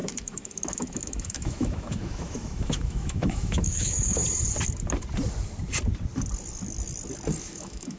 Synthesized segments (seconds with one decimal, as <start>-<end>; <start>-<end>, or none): 0.0-4.2; 7.4-8.0